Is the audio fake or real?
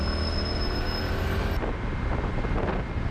real